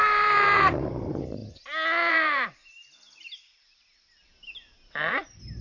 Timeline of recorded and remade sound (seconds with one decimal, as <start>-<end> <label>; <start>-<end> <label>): 0.0-1.4 remade; 1.4-2.1 recorded; 2.1-2.6 remade; 2.6-5.1 recorded; 5.1-5.6 remade